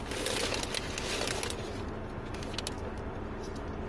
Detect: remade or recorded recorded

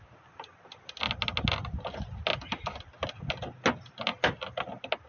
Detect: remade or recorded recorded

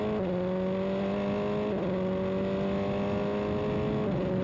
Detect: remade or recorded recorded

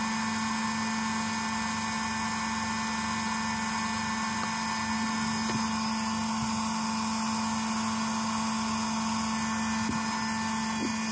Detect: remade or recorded recorded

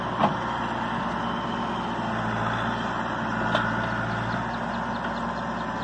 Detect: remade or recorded recorded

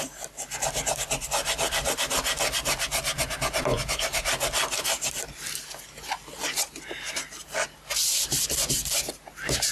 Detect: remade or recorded recorded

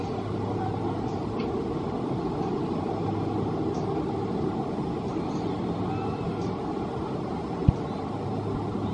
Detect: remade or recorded recorded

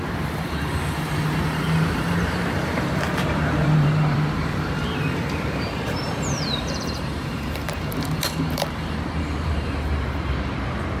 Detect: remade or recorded remade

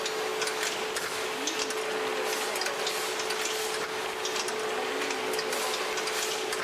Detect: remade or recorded recorded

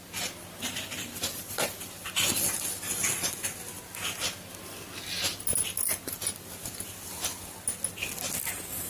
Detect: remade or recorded recorded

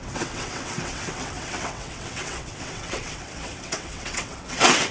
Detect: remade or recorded remade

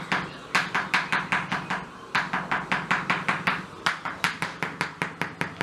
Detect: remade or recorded recorded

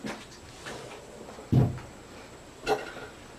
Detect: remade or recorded recorded